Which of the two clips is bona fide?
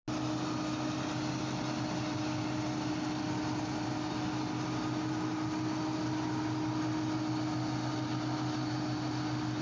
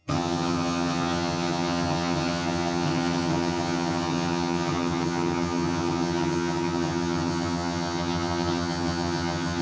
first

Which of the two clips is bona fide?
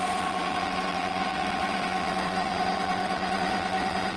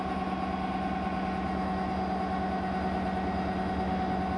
second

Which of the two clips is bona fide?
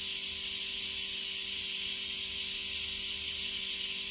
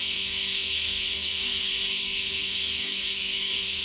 first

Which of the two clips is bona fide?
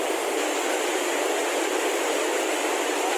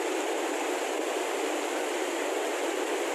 second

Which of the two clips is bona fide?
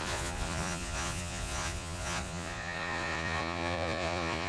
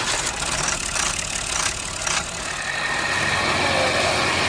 second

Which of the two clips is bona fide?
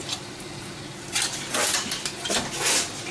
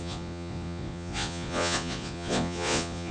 first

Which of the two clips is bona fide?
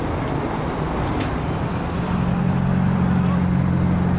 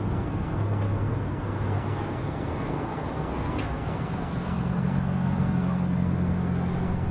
first